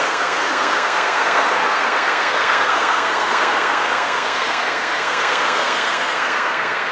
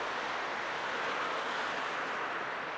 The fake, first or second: first